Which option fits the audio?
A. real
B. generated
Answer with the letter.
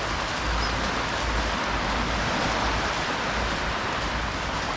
A